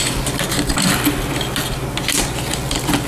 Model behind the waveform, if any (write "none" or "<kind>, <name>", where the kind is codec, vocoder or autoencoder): none